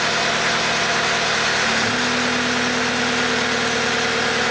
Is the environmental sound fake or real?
real